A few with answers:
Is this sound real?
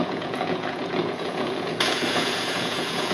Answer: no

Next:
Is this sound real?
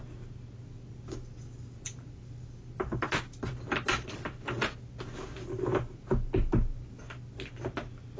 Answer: yes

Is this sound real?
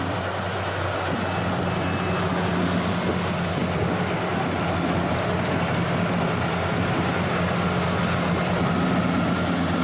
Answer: yes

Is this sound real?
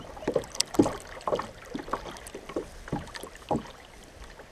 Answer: yes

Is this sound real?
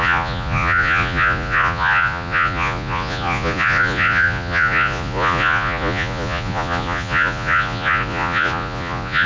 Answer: no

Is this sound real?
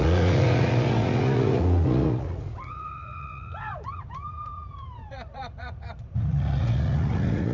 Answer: no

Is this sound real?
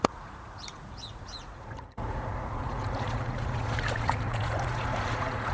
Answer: no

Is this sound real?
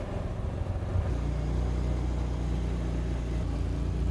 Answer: yes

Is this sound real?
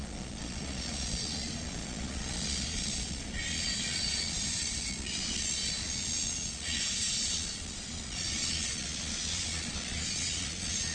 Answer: no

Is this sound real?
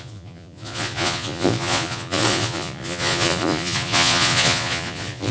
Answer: no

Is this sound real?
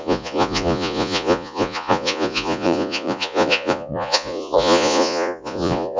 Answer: no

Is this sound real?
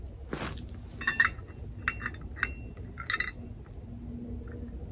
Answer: yes